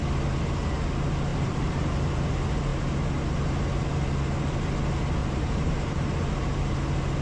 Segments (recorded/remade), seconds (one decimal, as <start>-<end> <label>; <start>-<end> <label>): 0.0-1.3 recorded; 1.3-2.3 remade; 2.3-5.2 recorded; 5.2-6.0 remade; 6.0-7.2 recorded